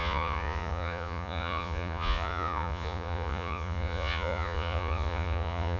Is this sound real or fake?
fake